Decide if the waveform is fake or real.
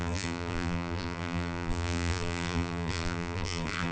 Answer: fake